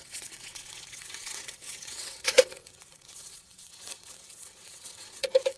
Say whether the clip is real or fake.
fake